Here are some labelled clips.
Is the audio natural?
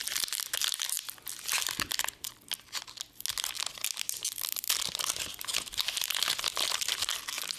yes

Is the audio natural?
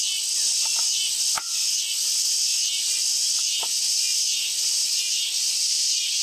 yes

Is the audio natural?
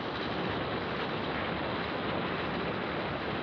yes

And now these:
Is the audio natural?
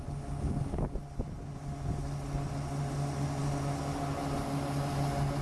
yes